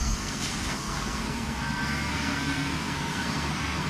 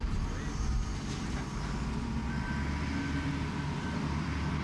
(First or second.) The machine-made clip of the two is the first